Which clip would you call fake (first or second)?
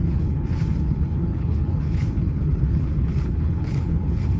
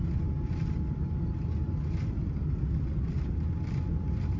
first